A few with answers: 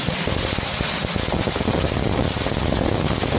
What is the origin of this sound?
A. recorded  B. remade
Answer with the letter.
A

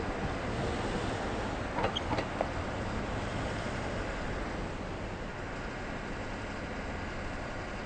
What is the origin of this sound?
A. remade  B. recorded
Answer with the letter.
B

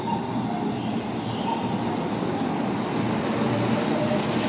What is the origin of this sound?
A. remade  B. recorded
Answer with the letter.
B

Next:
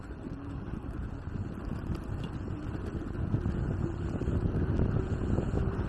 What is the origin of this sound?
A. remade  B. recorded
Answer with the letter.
B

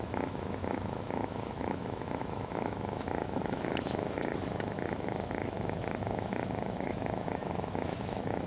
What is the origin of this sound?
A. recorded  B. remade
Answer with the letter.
B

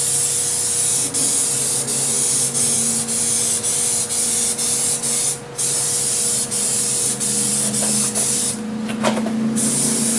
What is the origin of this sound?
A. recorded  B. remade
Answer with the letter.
A